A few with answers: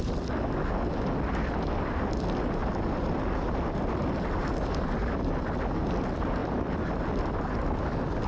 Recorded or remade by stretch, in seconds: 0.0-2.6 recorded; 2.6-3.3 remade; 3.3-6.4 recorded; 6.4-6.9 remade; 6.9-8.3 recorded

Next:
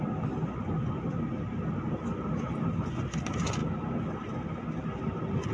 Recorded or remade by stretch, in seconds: 0.0-5.5 recorded

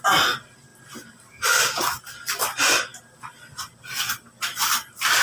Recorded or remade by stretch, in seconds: 0.0-0.7 recorded; 0.7-2.4 remade; 2.4-2.9 recorded; 2.9-4.7 remade; 4.7-5.2 recorded

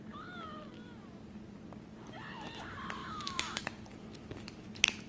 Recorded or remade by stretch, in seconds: 0.0-3.0 recorded; 3.0-3.6 remade; 3.6-5.1 recorded

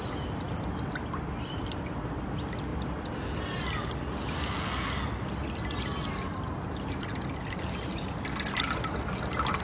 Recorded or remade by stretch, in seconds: 0.0-9.6 recorded